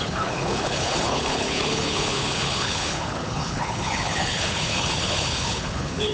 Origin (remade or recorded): remade